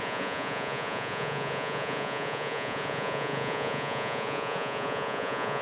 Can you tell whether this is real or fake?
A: fake